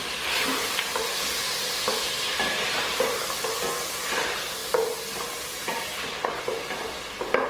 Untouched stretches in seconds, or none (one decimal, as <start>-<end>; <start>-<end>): 0.0-7.5